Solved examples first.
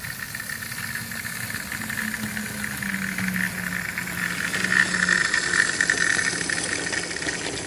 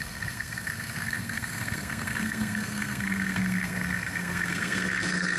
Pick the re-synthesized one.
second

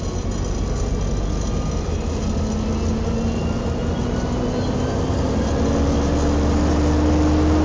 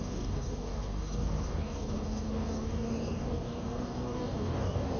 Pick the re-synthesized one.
second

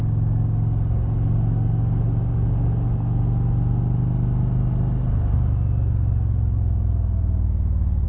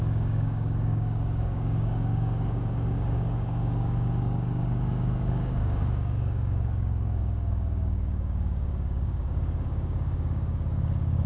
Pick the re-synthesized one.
second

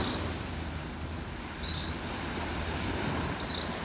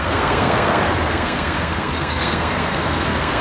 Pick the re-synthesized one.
second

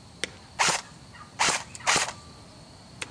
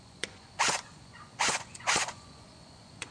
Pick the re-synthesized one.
second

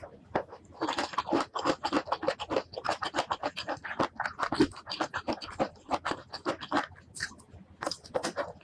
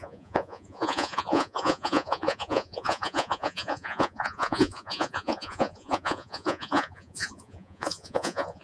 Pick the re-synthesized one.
second